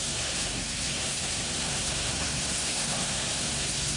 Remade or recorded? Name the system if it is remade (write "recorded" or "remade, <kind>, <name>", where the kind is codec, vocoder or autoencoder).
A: remade, codec, SNAC